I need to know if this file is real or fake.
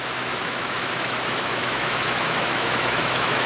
fake